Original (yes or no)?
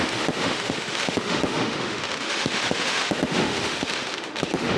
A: no